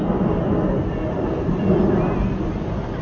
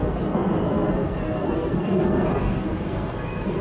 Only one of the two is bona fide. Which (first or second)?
first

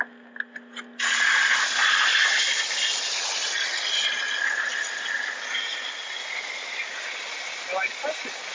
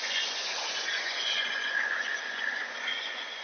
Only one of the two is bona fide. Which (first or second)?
first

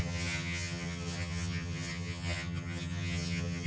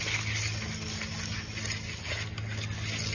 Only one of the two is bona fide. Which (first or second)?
second